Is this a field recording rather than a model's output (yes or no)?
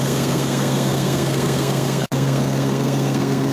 no